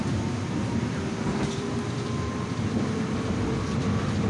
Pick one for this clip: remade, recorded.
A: remade